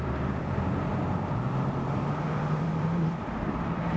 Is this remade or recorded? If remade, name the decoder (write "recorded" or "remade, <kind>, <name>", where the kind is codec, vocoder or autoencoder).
remade, vocoder, BigVGAN v2